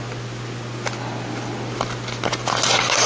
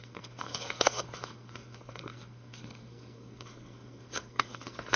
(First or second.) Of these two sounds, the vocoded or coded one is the second